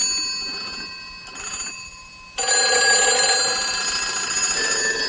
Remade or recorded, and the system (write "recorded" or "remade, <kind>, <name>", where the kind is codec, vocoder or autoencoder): recorded